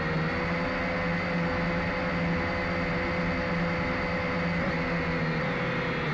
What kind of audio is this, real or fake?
real